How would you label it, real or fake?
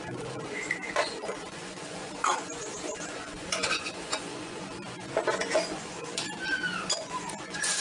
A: fake